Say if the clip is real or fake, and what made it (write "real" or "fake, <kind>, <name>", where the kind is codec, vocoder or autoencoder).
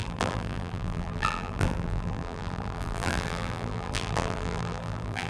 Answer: fake, vocoder, BigVGAN v2